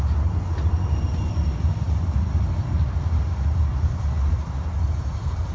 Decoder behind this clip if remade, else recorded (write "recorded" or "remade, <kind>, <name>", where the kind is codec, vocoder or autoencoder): recorded